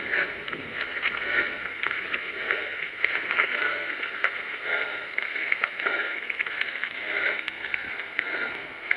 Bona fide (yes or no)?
no